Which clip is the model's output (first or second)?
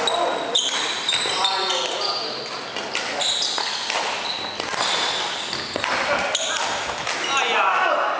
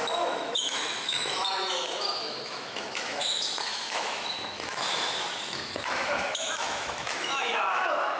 second